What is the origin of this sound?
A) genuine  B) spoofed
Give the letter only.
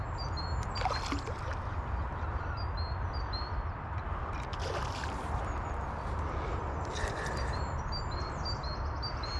A